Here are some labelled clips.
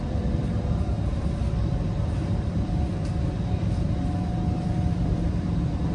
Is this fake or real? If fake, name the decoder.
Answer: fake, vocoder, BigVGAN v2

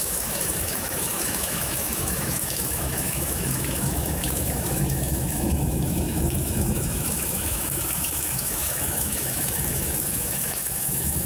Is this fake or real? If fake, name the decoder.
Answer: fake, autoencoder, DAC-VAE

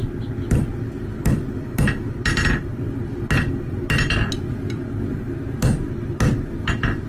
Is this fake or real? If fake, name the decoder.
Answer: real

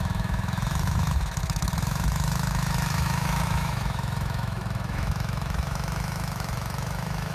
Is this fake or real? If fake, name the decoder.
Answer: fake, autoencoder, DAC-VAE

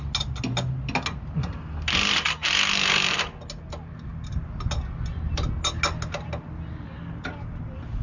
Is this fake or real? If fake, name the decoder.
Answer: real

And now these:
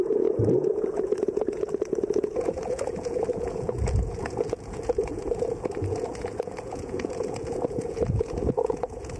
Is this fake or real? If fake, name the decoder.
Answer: fake, vocoder, Vocos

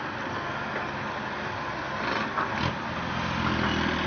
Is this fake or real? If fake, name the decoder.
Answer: real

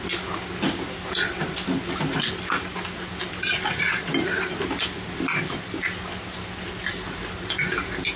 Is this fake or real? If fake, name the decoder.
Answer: real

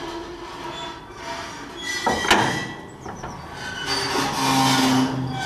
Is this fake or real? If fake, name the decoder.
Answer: real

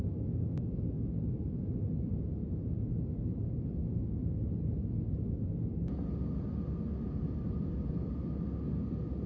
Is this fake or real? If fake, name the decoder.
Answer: real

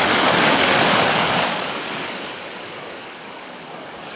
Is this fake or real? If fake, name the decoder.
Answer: fake, codec, DAC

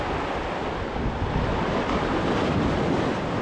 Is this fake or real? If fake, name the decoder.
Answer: real